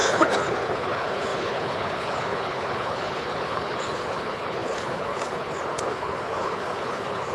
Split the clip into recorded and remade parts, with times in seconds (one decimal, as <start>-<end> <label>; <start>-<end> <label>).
0.0-7.3 remade